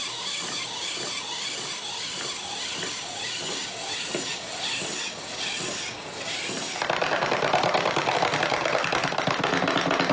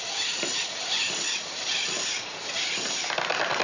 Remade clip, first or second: second